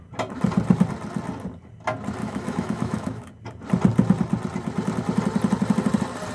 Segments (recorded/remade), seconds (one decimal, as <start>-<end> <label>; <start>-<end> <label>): 0.0-2.2 recorded; 2.2-3.3 remade; 3.3-6.3 recorded